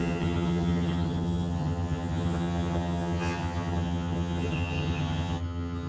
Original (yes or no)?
no